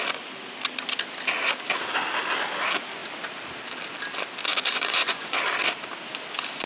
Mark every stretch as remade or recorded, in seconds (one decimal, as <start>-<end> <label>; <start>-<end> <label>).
0.0-4.5 recorded; 4.5-5.4 remade; 5.4-6.7 recorded